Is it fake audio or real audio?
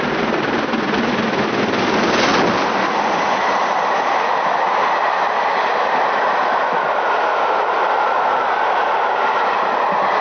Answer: real